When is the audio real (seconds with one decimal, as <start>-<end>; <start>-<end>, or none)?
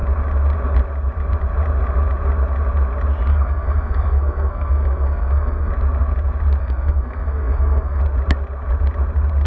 0.0-3.3; 5.7-6.6; 8.0-9.5